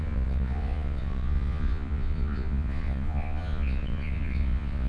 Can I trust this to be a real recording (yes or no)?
no